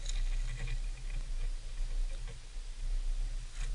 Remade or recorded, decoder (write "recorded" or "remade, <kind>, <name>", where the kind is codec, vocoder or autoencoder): recorded